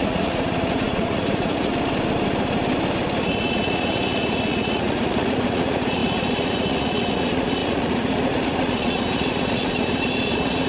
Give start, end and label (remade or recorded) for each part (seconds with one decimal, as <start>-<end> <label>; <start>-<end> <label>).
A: 0.0-1.7 remade; 1.7-3.2 recorded; 3.2-10.7 remade